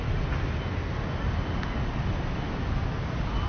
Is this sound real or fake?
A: real